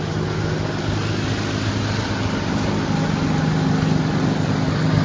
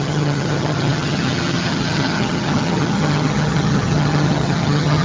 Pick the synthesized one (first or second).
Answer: second